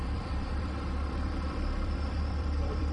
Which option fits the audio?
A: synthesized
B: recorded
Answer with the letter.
A